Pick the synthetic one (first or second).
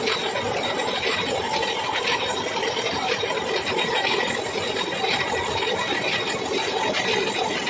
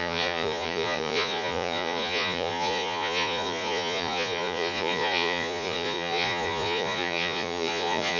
second